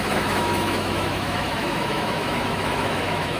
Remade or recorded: remade